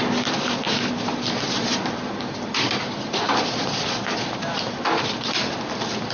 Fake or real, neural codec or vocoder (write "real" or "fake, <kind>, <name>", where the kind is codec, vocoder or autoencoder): fake, vocoder, BigVGAN v2